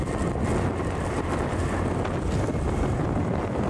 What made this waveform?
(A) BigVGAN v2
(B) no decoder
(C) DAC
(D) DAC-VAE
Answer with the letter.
B